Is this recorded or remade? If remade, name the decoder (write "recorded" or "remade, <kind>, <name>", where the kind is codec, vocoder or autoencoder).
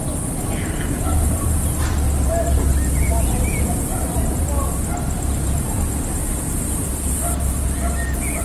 recorded